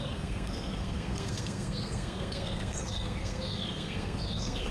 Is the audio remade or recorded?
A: remade